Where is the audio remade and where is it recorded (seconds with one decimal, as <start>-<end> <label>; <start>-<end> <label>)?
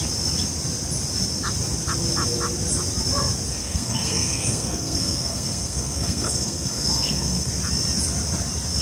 0.0-3.6 recorded; 3.6-7.5 remade; 7.5-8.8 recorded